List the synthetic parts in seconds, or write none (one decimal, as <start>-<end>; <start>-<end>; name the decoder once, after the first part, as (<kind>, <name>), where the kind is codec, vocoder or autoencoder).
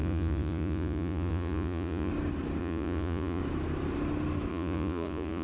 0.0-2.1 (vocoder, Vocos); 2.6-3.4; 4.5-5.4